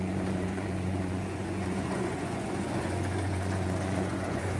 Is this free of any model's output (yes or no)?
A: no